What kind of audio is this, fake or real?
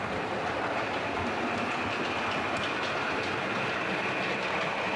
real